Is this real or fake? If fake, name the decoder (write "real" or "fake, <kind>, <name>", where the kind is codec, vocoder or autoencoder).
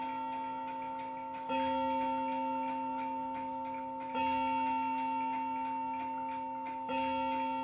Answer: real